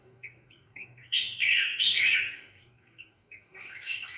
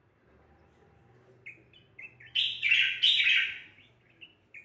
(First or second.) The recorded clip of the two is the second